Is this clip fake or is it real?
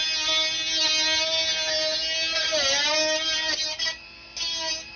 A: real